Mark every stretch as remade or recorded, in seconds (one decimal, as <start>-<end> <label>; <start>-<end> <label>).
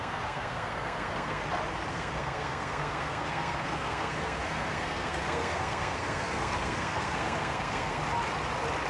0.0-1.4 remade; 1.4-1.9 recorded; 1.9-8.0 remade; 8.0-8.9 recorded